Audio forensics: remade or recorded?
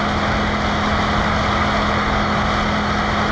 recorded